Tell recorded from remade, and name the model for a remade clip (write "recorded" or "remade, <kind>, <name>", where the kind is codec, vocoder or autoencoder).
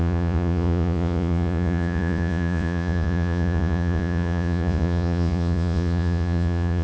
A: remade, vocoder, Vocos